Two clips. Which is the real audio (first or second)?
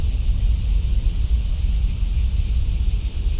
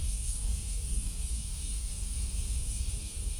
first